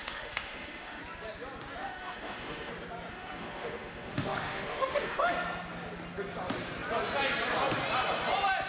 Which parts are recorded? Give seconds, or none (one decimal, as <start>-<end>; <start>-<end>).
1.0-1.8; 2.7-3.1; 5.3-8.7